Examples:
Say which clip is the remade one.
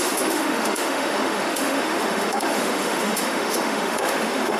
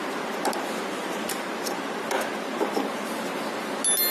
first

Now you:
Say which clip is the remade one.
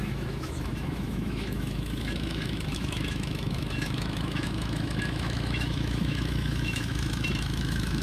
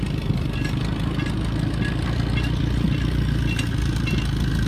first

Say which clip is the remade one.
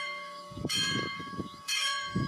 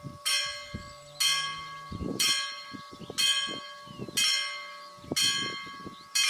first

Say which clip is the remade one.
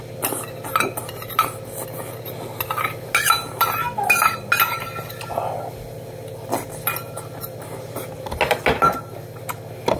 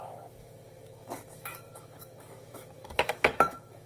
second